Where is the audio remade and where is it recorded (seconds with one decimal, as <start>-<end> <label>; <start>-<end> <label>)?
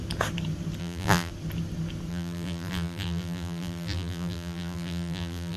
0.0-0.8 recorded; 0.8-1.3 remade; 1.3-2.1 recorded; 2.1-5.6 remade